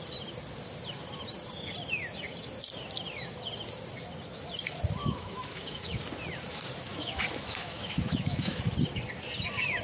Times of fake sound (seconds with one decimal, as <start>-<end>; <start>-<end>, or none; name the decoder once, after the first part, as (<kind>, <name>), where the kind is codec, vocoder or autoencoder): 5.0-6.0 (autoencoder, DAC-VAE); 6.9-8.6